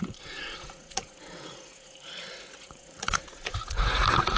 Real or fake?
fake